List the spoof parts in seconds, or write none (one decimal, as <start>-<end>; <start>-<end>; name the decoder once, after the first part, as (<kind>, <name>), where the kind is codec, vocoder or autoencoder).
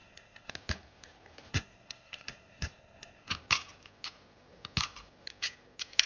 0.0-0.5 (codec, SNAC); 1.5-3.3